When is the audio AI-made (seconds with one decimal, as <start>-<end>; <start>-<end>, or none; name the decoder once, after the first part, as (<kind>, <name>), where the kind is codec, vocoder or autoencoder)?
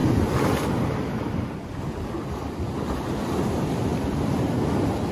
none